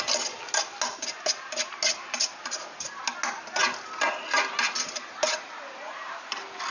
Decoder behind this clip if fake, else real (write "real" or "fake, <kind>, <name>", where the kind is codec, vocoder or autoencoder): real